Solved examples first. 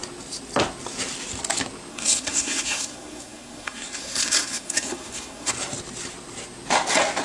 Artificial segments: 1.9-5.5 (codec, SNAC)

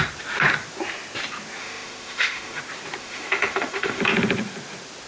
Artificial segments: 1.6-2.6 (autoencoder, DAC-VAE); 3.0-4.0

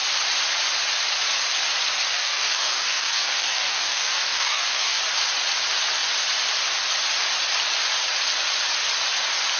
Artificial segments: 2.1-5.0 (codec, DAC)

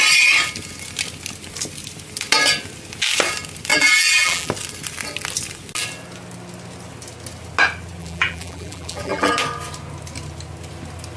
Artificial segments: 3.7-4.5 (vocoder, BigVGAN v2); 8.0-9.3

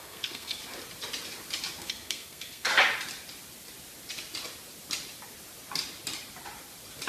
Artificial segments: 0.0-0.6 (codec, SNAC); 1.8-2.7

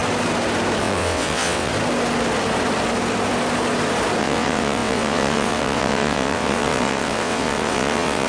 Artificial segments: 0.8-1.7 (vocoder, WaveNeXt); 4.2-8.3

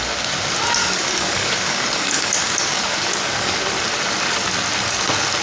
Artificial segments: 0.8-3.6 (codec, DAC)

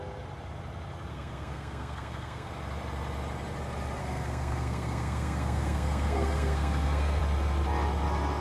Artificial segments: 1.1-2.5 (codec, SNAC); 4.0-7.2